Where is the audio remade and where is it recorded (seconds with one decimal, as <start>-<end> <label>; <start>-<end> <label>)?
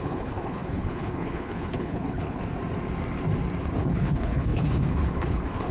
0.0-2.4 remade; 2.4-3.8 recorded; 3.8-5.7 remade